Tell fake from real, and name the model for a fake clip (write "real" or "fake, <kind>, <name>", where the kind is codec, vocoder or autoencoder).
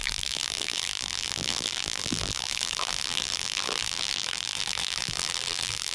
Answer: fake, vocoder, BigVGAN v2